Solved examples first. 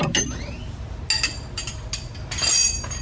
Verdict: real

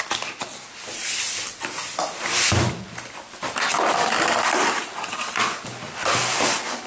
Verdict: fake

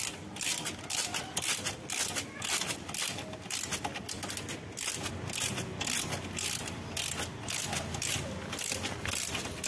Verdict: real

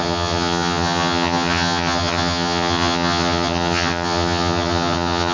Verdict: fake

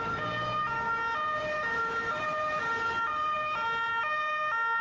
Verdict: fake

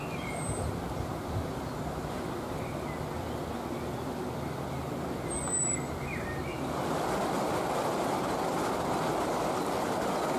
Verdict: real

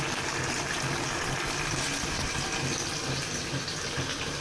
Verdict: real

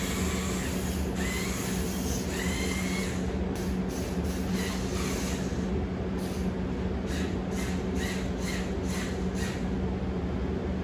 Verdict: real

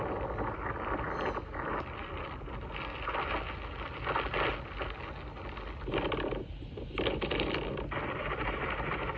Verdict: real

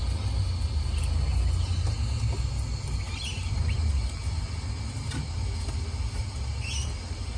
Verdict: real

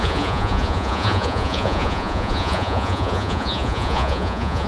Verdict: fake